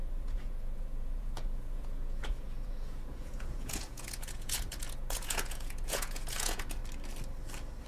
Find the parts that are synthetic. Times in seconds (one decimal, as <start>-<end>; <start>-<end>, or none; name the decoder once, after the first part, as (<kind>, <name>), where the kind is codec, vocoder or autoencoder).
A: 0.0-6.8 (vocoder, Vocos)